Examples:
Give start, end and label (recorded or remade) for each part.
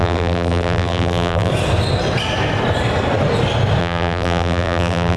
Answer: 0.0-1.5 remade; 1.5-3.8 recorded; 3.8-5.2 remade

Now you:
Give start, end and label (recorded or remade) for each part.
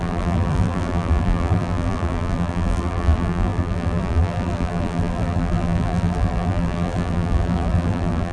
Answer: 0.0-8.3 remade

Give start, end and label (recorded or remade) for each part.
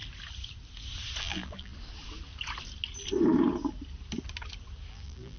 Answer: 0.0-1.2 recorded; 1.2-1.7 remade; 1.7-4.9 recorded; 4.9-5.4 remade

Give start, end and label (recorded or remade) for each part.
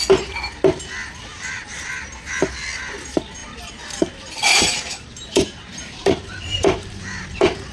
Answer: 0.0-1.3 recorded; 1.3-1.8 remade; 1.8-3.4 recorded; 3.4-7.7 remade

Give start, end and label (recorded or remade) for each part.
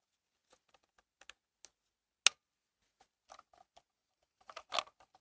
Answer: 0.0-4.0 recorded; 4.0-4.7 remade; 4.7-5.2 recorded